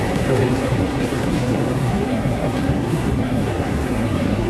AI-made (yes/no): yes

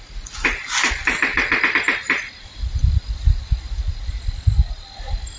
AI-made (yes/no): no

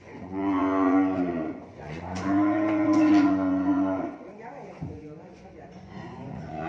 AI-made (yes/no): yes